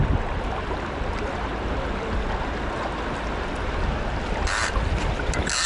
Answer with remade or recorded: recorded